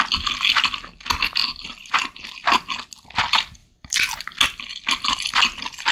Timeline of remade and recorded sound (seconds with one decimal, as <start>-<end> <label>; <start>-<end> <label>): 0.0-3.6 recorded; 3.6-4.2 remade; 4.2-5.9 recorded